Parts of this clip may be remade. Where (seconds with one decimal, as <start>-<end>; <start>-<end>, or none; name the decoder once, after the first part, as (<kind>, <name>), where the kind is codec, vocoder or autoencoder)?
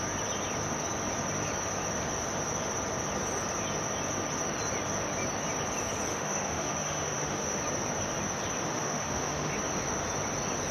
6.1-7.6 (autoencoder, DAC-VAE); 8.7-9.5